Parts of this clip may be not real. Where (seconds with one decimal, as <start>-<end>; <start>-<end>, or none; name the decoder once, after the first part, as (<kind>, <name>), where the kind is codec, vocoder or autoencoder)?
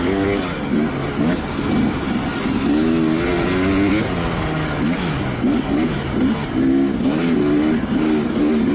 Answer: none